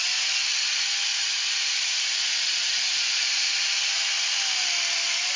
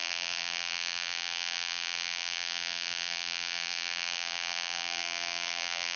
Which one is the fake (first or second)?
second